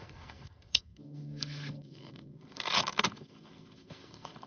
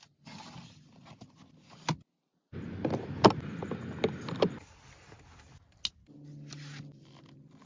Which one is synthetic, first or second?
first